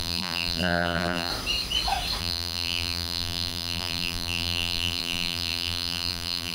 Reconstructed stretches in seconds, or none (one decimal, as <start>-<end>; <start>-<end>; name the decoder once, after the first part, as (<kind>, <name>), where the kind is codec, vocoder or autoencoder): 0.0-1.3 (vocoder, BigVGAN v2); 2.2-6.5